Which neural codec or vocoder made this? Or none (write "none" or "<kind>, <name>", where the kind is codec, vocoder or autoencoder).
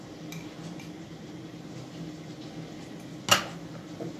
none